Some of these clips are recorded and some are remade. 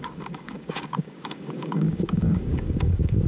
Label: remade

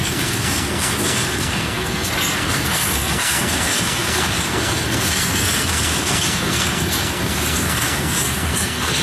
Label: remade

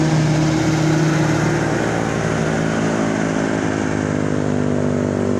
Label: recorded